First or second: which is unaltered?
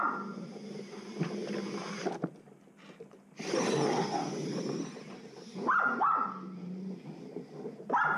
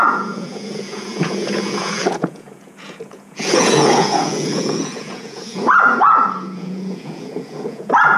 first